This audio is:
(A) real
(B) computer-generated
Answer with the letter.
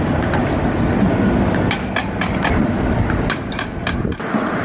A